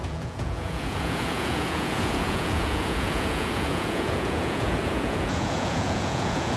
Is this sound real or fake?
fake